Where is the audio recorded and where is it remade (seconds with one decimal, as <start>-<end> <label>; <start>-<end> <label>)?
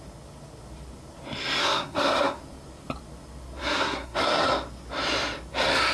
0.0-1.6 recorded; 1.6-2.4 remade; 2.4-3.6 recorded; 3.6-4.5 remade; 4.5-5.9 recorded